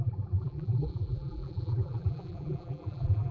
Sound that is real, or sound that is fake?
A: fake